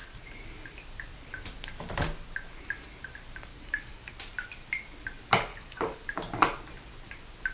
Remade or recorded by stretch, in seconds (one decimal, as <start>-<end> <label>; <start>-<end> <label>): 0.0-3.5 recorded; 3.5-4.1 remade; 4.1-5.5 recorded; 5.5-6.0 remade; 6.0-7.5 recorded